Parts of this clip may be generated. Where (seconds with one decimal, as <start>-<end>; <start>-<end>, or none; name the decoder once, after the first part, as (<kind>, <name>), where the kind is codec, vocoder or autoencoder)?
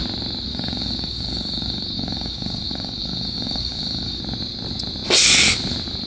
0.5-4.2 (codec, DAC)